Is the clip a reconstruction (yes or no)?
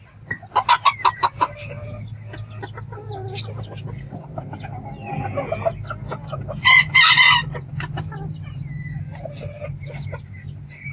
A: no